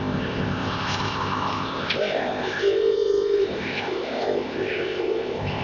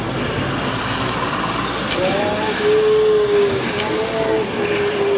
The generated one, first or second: first